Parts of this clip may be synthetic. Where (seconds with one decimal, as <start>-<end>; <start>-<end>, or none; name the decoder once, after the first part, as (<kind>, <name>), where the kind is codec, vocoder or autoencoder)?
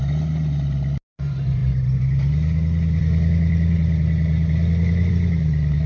none